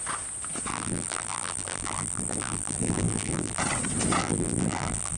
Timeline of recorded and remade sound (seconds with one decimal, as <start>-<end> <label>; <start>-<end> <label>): 0.0-0.7 recorded; 0.7-3.6 remade; 3.6-4.2 recorded; 4.2-5.2 remade